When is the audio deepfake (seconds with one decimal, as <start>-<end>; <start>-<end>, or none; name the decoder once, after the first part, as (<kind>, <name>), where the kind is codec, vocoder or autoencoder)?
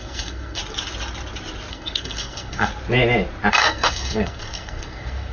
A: 0.0-0.6 (codec, SNAC); 1.7-2.7; 3.5-5.3